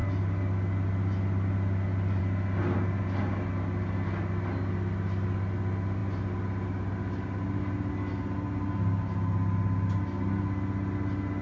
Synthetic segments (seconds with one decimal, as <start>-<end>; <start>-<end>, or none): none